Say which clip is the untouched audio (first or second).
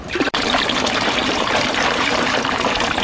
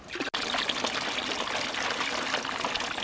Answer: second